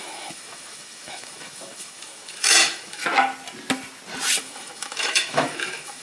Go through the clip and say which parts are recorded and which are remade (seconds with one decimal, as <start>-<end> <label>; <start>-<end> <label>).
0.0-3.0 remade; 3.0-4.4 recorded; 4.4-6.0 remade